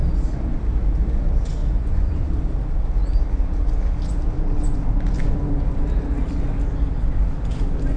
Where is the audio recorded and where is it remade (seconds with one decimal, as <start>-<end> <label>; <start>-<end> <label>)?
0.0-1.6 recorded; 1.6-2.2 remade; 2.2-8.0 recorded